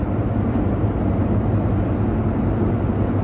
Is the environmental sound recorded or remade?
recorded